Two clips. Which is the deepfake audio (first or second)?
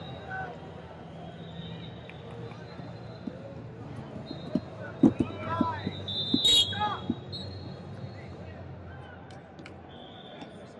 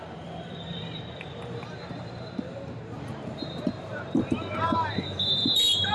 second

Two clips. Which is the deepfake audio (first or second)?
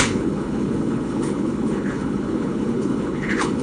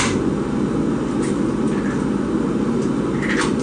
first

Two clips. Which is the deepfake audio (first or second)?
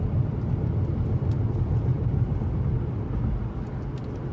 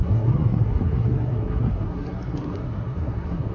second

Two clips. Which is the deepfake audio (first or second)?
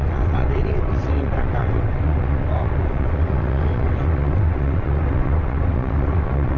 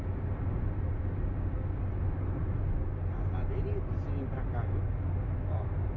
first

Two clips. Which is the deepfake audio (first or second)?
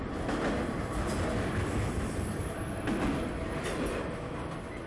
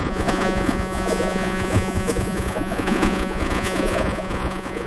second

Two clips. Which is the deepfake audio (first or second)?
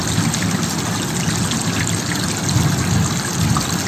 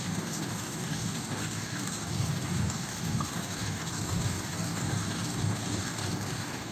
second